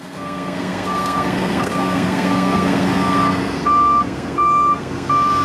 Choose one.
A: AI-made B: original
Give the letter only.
A